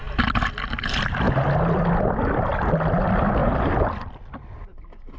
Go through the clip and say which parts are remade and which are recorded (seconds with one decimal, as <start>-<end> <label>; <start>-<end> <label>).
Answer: 0.0-5.2 recorded